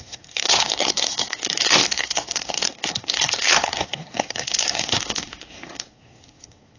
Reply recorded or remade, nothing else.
remade